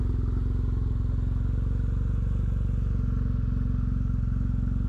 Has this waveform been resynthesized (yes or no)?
no